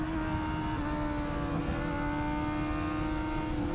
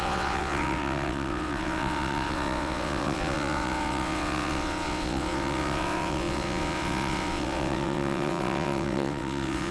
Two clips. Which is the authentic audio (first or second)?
first